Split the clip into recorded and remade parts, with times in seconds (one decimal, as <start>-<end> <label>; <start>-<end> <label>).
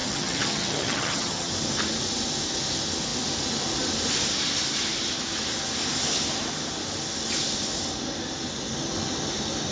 0.0-1.5 remade; 1.5-9.7 recorded